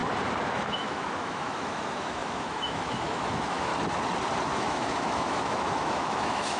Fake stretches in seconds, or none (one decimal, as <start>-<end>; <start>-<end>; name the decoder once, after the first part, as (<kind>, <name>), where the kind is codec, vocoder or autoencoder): 0.7-3.7 (autoencoder, DAC-VAE); 4.5-6.6